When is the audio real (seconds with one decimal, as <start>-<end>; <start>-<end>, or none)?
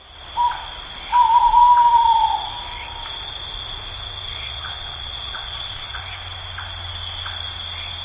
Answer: 0.0-4.3; 6.0-8.0